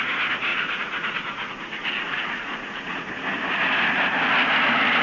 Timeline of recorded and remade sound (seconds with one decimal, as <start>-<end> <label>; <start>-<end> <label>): 0.0-0.5 recorded; 0.5-3.1 remade; 3.1-5.0 recorded